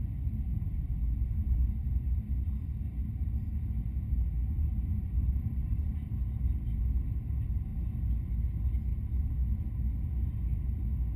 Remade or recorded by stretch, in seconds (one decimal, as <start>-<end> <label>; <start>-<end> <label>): 0.0-4.9 recorded; 4.9-6.2 remade; 6.2-11.2 recorded